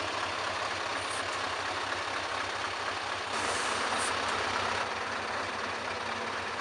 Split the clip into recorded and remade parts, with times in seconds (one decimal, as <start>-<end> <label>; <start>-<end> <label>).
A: 0.0-6.6 recorded